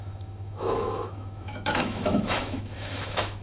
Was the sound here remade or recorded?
remade